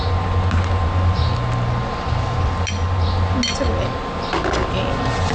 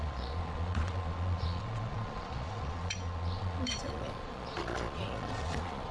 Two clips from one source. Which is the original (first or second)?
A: first